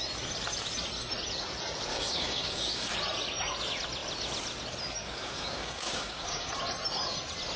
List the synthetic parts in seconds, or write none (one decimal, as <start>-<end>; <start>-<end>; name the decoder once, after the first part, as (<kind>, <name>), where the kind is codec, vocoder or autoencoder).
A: 1.9-2.9 (codec, DAC); 5.0-6.5